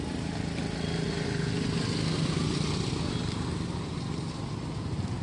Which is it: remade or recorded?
recorded